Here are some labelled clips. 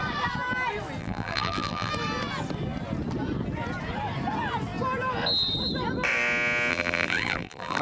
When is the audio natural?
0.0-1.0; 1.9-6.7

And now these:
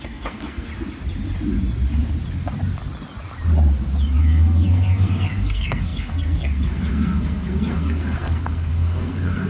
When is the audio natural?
0.7-4.2

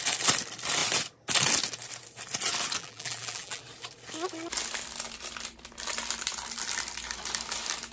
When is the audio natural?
0.0-2.8; 3.6-7.9

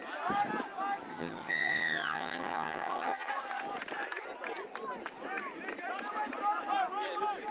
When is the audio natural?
0.0-1.1; 3.3-7.5

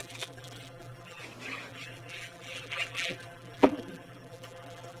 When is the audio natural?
1.2-1.7

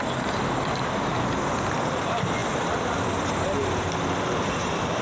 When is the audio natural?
0.0-5.0

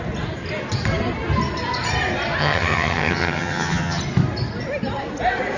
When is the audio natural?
0.0-2.4; 4.0-5.6

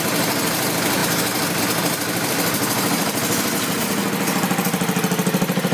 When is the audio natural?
0.0-5.7